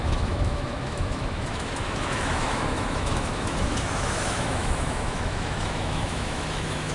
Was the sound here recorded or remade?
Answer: remade